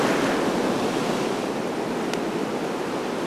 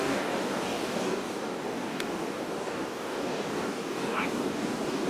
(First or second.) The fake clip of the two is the second